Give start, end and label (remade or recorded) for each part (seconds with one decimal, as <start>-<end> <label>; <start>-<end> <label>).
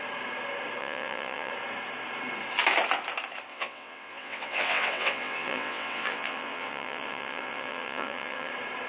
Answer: 0.0-0.8 recorded; 0.8-1.5 remade; 1.5-3.5 recorded; 3.5-8.5 remade; 8.5-8.9 recorded